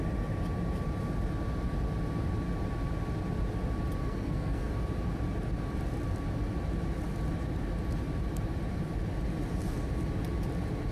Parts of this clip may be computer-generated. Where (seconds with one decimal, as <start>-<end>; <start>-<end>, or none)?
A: 4.0-4.7